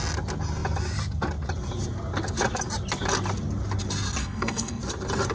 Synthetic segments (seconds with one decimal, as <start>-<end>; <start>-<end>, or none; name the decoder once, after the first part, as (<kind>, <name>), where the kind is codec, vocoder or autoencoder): 4.2-4.8 (codec, SNAC)